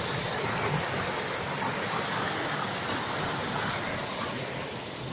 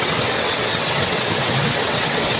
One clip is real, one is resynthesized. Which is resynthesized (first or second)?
second